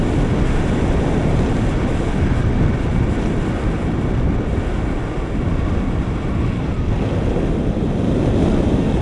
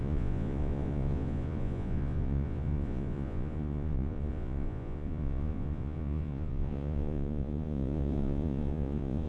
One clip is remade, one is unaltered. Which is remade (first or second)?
second